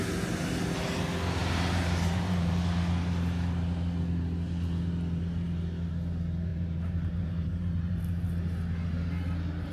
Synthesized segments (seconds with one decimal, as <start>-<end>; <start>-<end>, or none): 1.4-2.5; 6.5-8.0

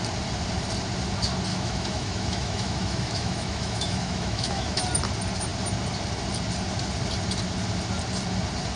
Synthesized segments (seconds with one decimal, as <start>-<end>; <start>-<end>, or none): 1.5-4.8

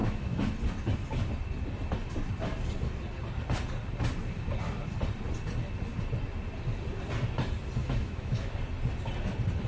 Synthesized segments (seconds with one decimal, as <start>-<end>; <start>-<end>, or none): 0.0-0.5; 7.8-8.5

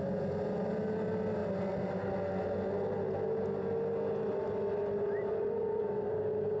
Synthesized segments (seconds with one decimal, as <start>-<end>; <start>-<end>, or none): 4.8-5.8

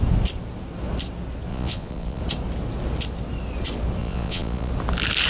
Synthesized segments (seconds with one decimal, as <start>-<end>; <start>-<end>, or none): 1.5-2.2; 4.0-4.7

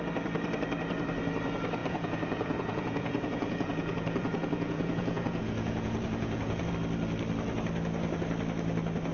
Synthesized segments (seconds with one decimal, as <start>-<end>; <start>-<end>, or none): 1.8-6.7